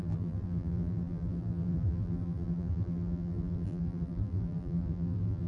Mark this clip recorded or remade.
remade